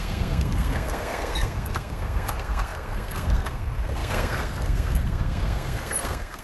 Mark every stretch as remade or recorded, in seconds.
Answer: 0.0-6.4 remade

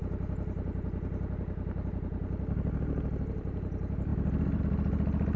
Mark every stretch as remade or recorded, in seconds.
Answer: 0.0-1.9 recorded; 1.9-5.4 remade

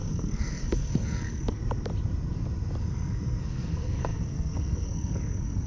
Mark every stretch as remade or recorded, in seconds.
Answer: 0.0-1.6 remade; 1.6-2.8 recorded; 2.8-5.7 remade

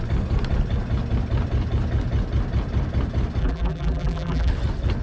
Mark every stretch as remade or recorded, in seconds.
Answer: 0.0-3.4 recorded; 3.4-4.5 remade; 4.5-5.0 recorded